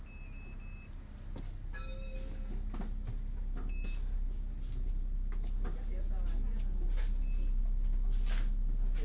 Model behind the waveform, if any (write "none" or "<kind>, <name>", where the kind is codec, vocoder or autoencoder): none